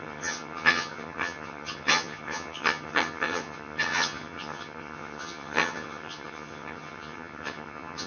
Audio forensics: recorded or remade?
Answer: remade